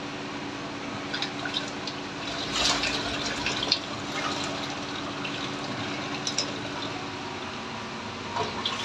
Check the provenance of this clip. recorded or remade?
recorded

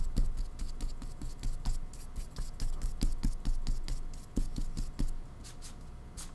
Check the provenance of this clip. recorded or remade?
recorded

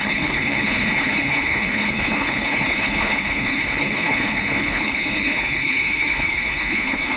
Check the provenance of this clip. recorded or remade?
remade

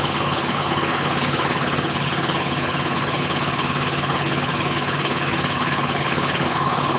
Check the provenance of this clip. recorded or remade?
remade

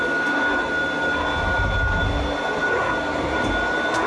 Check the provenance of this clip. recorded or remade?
recorded